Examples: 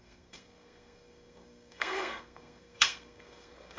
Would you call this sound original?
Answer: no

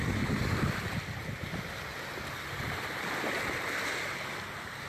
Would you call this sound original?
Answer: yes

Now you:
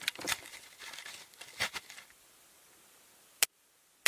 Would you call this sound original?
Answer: yes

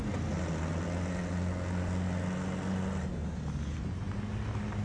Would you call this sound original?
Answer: yes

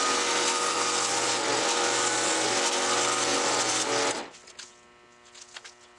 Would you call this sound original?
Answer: yes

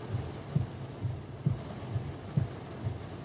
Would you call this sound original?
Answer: yes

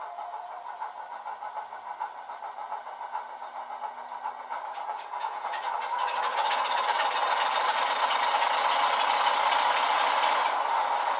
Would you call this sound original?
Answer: yes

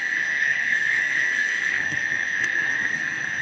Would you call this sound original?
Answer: no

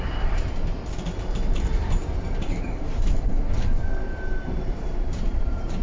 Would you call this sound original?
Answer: no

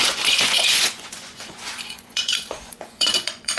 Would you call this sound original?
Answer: no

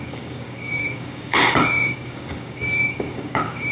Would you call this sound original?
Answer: no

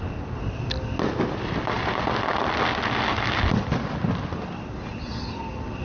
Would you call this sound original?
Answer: yes